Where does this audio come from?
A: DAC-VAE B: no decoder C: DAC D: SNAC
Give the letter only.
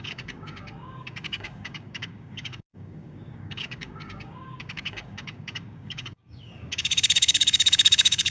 C